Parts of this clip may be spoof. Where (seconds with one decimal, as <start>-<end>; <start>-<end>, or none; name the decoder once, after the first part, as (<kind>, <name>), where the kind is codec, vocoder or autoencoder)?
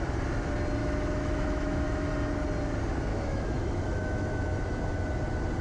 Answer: 0.8-2.1 (autoencoder, DAC-VAE); 3.1-4.8